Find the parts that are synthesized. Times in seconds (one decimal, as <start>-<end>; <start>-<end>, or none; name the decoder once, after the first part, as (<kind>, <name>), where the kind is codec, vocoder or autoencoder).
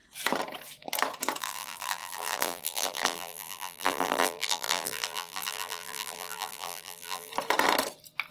1.4-7.3 (vocoder, BigVGAN v2)